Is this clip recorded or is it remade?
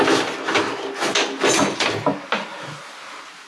recorded